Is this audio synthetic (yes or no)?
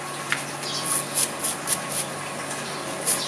no